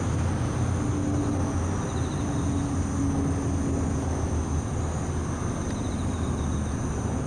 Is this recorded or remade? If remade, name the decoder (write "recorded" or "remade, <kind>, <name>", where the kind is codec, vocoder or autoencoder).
recorded